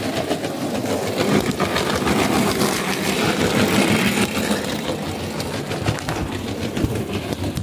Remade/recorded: recorded